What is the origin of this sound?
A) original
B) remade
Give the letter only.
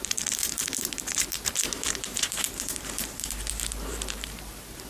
B